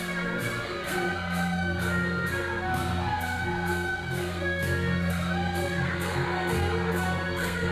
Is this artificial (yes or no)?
yes